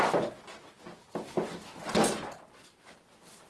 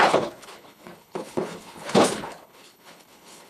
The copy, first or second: second